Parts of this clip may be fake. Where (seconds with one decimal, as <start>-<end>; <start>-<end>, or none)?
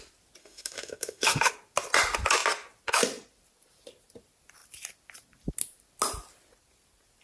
0.4-1.5